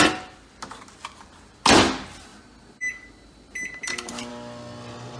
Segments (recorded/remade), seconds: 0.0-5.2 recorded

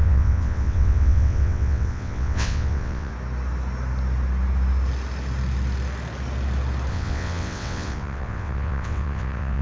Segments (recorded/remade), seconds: 0.0-3.1 remade; 3.1-6.9 recorded; 6.9-9.6 remade

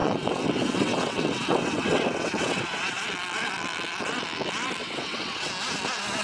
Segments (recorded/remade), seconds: 0.0-3.0 remade; 3.0-4.8 recorded; 4.8-5.5 remade; 5.5-6.2 recorded